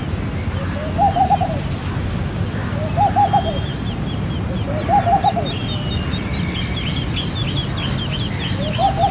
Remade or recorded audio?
recorded